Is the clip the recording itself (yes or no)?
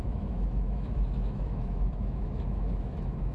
no